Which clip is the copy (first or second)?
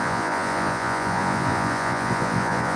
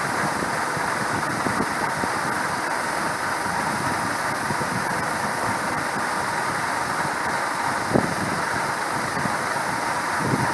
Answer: first